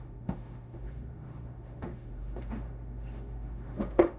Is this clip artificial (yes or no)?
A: yes